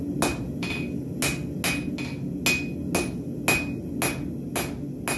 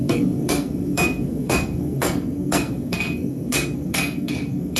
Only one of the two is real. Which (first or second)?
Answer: first